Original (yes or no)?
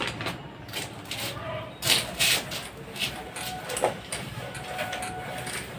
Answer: yes